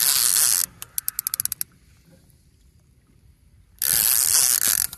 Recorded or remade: recorded